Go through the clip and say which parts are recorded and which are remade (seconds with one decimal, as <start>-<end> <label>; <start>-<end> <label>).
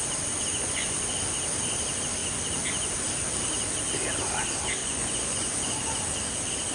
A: 0.0-0.5 recorded; 0.5-1.1 remade; 1.1-4.8 recorded; 4.8-6.0 remade; 6.0-6.7 recorded